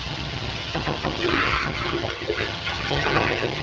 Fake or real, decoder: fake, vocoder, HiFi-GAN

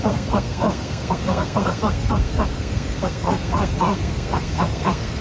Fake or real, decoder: fake, codec, SNAC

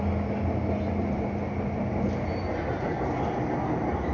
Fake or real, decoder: real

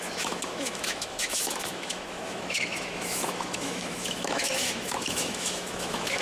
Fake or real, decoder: fake, autoencoder, DAC-VAE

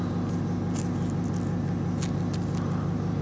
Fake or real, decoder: real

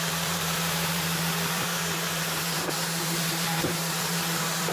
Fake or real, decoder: fake, vocoder, BigVGAN v2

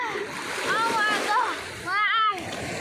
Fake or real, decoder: real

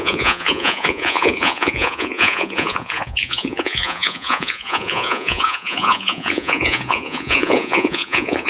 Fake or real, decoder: fake, vocoder, Vocos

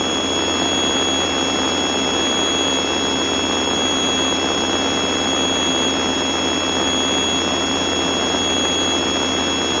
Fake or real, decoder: real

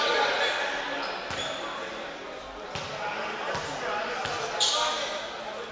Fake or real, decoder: real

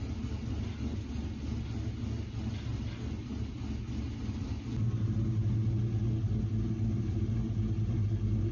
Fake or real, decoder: real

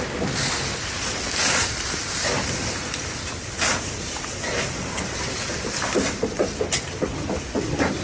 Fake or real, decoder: real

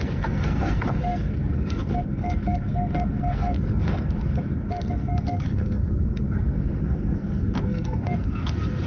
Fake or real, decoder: fake, codec, SNAC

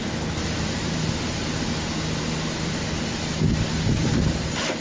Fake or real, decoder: real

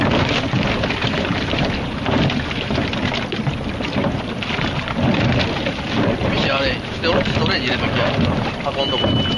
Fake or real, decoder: real